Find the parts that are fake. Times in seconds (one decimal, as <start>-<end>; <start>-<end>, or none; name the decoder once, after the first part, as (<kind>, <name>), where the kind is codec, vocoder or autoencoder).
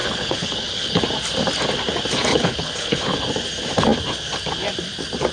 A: 0.0-1.0 (codec, HILCodec); 2.3-3.2